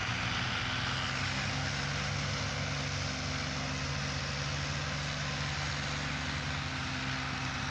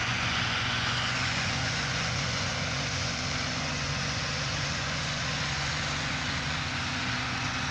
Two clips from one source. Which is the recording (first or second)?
first